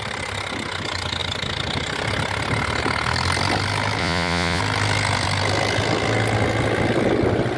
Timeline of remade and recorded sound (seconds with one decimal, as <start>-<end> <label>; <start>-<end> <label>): 0.0-4.0 recorded; 4.0-4.6 remade; 4.6-7.6 recorded